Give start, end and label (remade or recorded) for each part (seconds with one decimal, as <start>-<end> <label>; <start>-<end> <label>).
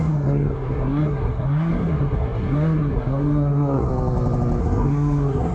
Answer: 0.0-3.9 remade; 3.9-4.6 recorded; 4.6-5.5 remade